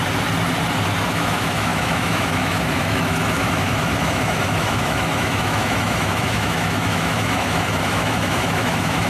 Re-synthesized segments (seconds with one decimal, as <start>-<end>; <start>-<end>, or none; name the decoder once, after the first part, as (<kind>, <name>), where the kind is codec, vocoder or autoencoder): 1.1-9.1 (autoencoder, DAC-VAE)